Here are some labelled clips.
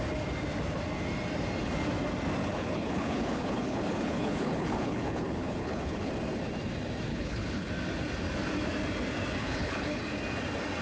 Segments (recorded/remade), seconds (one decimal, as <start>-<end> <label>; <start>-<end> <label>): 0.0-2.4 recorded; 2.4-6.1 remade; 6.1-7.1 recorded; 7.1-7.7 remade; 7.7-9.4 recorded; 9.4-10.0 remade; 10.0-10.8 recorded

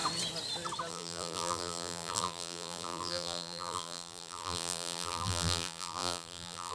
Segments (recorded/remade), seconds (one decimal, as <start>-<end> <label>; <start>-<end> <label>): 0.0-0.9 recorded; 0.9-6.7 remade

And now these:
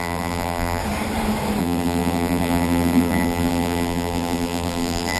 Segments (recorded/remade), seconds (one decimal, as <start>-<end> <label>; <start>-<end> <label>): 0.0-0.8 remade; 0.8-1.6 recorded; 1.6-5.2 remade

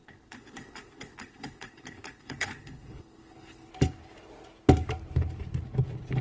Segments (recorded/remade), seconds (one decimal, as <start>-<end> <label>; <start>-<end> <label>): 0.0-3.7 remade; 3.7-6.2 recorded